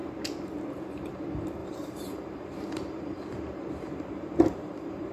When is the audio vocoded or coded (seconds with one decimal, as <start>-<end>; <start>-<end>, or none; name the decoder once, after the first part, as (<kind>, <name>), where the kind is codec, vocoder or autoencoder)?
1.6-5.1 (vocoder, BigVGAN v2)